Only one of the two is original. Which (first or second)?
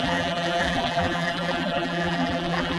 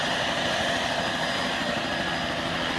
second